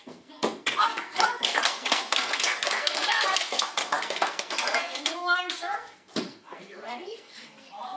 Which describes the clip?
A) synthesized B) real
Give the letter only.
A